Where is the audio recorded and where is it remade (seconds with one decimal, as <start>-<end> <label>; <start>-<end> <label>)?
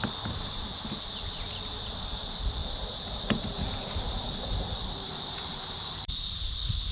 0.0-1.1 remade; 1.1-2.6 recorded; 2.6-6.4 remade; 6.4-6.9 recorded